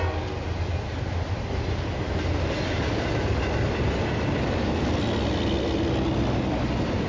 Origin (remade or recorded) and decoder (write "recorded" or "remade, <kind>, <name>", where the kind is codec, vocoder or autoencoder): recorded